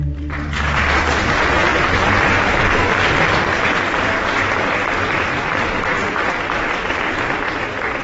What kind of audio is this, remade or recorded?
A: remade